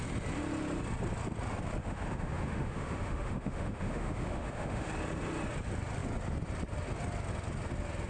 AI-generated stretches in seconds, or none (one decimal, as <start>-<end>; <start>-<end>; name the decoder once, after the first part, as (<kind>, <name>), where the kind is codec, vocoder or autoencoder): 1.8-4.9 (autoencoder, DAC-VAE)